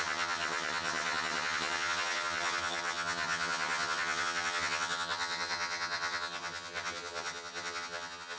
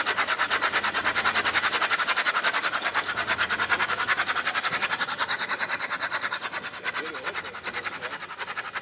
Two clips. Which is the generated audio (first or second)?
first